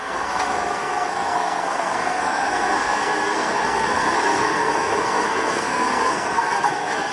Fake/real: fake